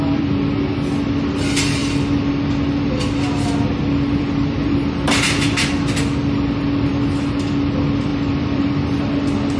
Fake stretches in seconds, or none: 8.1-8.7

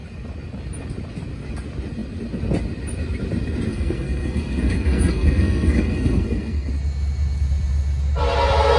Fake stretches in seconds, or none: 3.7-6.7

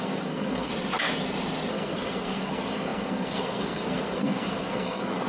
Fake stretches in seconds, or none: 0.0-0.7; 1.7-5.3

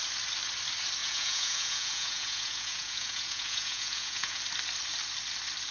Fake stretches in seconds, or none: 1.0-4.4

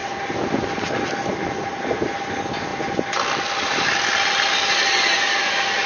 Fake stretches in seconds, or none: 2.7-3.9

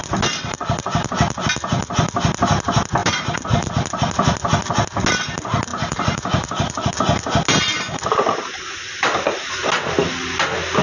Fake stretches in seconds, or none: 3.0-3.7; 5.7-6.9